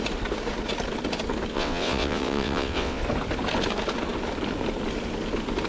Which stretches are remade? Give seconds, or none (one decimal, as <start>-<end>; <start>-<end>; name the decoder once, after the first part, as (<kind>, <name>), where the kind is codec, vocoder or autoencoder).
1.5-3.0 (vocoder, WaveNeXt)